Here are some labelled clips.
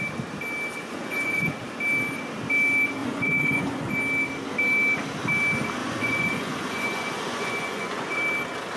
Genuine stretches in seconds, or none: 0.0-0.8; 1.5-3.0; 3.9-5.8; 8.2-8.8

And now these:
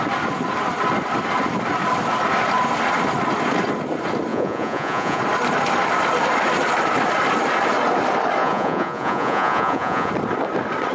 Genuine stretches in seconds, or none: 0.0-4.3; 5.2-8.4; 10.1-10.9

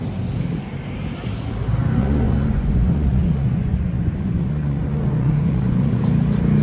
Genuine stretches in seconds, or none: 0.0-2.0; 6.0-6.6

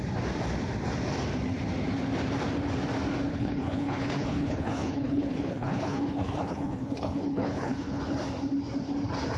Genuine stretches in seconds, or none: 0.0-3.3; 8.0-9.4